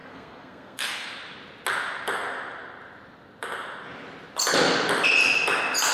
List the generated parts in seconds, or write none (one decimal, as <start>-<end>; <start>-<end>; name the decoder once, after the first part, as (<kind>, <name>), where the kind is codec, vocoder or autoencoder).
0.0-1.1 (codec, SNAC)